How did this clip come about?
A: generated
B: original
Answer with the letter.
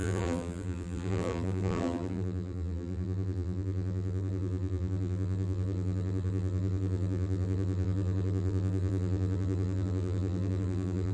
A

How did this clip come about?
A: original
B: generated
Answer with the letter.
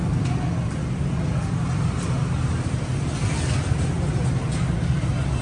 A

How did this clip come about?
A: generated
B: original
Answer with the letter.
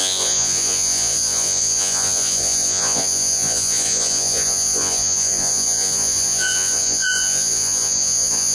A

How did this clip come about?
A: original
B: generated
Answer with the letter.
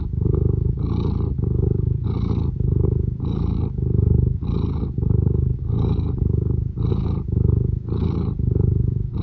B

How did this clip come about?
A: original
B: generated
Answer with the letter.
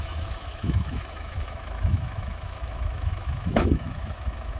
B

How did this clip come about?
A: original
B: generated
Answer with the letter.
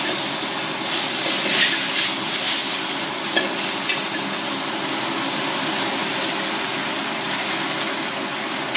A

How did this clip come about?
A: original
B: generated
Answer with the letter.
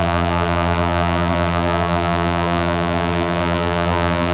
B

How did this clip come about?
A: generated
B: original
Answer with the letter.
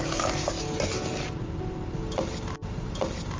B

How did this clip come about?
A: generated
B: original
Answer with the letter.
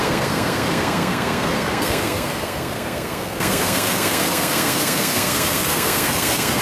A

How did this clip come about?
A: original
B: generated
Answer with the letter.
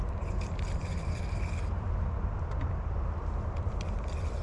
A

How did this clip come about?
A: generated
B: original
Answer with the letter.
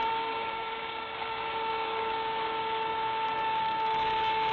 A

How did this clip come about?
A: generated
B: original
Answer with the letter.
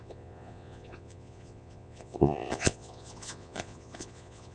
A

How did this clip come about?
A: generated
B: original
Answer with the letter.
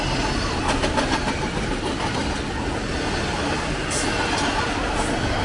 B